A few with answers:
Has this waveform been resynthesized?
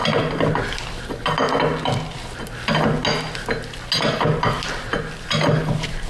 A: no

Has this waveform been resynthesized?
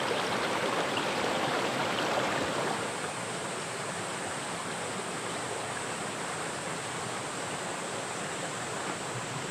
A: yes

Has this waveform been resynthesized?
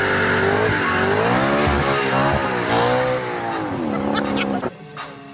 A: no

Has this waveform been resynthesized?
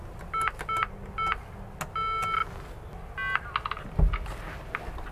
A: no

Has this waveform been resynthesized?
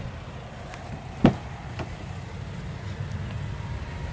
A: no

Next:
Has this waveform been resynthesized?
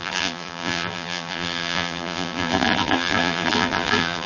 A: yes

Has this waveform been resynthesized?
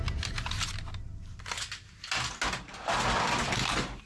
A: no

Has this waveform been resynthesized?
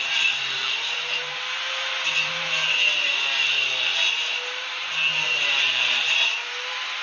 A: yes